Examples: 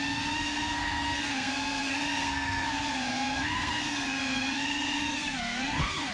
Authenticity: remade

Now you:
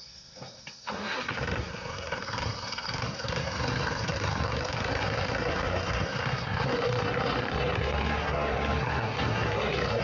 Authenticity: remade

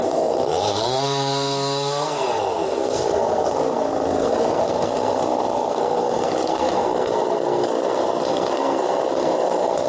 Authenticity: remade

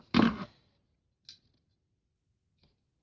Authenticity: recorded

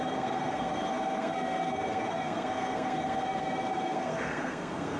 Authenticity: remade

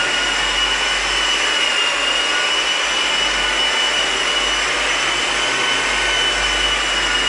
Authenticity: recorded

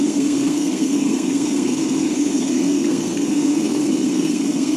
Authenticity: remade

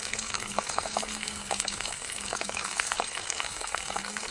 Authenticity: remade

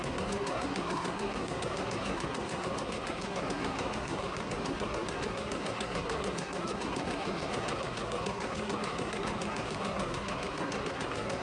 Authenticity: remade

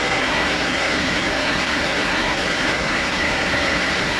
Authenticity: remade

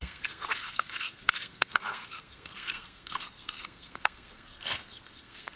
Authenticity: remade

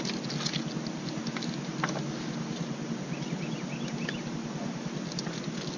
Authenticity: recorded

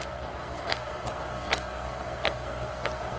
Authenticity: remade